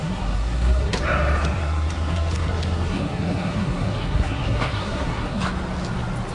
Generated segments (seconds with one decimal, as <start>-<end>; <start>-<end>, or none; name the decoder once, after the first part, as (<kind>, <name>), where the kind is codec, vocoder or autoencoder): 0.0-1.0 (codec, SNAC); 1.6-5.4